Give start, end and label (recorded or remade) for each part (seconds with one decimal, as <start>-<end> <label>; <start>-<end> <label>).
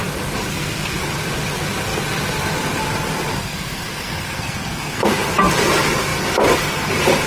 0.0-0.5 recorded; 0.5-1.0 remade; 1.0-3.4 recorded; 3.4-5.2 remade; 5.2-7.3 recorded